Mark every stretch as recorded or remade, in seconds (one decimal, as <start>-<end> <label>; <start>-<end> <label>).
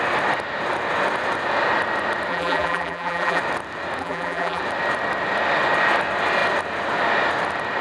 0.0-2.3 recorded; 2.3-3.4 remade; 3.4-4.0 recorded; 4.0-4.6 remade; 4.6-7.8 recorded